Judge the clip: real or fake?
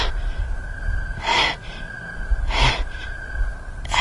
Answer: real